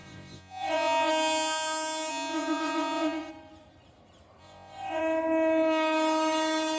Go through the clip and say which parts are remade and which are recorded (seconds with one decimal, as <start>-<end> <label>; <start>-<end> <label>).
0.0-1.1 remade; 1.1-2.1 recorded; 2.1-3.3 remade; 3.3-4.4 recorded; 4.4-5.0 remade; 5.0-6.8 recorded

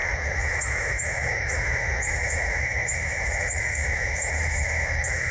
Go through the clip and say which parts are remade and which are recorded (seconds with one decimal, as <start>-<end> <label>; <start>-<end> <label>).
0.0-5.3 remade